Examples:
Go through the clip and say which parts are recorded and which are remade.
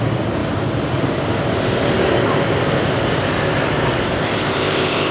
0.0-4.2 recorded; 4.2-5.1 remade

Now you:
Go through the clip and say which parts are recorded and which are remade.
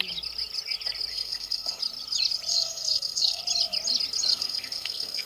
0.0-1.1 recorded; 1.1-1.8 remade; 1.8-2.5 recorded; 2.5-3.4 remade; 3.4-4.3 recorded; 4.3-5.3 remade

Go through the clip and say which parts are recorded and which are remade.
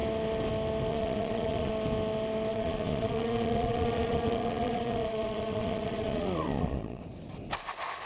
0.0-0.9 recorded; 0.9-1.7 remade; 1.7-2.5 recorded; 2.5-7.0 remade; 7.0-8.1 recorded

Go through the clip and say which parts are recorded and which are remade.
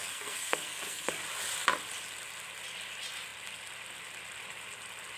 0.0-1.1 remade; 1.1-5.2 recorded